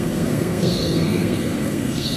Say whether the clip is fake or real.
fake